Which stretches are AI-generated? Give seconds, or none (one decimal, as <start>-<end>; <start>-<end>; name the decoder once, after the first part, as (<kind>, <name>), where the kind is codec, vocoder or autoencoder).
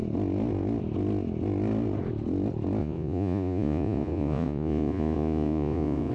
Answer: 2.8-6.1 (vocoder, Vocos)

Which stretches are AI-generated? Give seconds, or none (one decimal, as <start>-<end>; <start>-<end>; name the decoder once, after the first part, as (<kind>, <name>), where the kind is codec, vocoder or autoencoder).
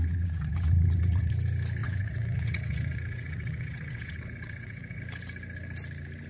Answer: 0.0-1.3 (vocoder, WaveNeXt); 1.8-5.0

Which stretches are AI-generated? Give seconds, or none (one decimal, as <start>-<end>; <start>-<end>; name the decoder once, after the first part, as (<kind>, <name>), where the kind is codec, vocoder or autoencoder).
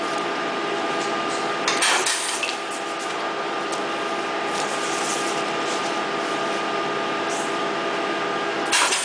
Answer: none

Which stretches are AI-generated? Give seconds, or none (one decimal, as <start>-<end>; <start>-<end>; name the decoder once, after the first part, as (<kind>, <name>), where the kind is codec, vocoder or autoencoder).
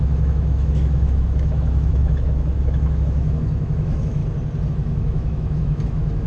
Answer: 0.0-4.2 (autoencoder, DAC-VAE); 4.7-6.3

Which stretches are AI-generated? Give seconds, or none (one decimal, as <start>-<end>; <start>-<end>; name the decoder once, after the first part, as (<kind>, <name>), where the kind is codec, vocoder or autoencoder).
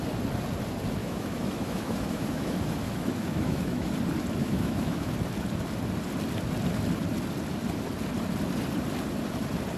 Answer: 1.0-3.9 (autoencoder, DAC-VAE); 4.4-5.1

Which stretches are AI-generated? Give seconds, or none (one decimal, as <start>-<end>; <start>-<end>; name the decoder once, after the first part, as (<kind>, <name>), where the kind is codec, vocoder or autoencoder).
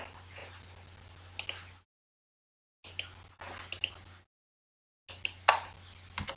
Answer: none